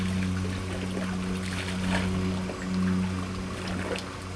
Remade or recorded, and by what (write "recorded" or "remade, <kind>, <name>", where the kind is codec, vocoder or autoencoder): recorded